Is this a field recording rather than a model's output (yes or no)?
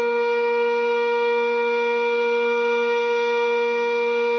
no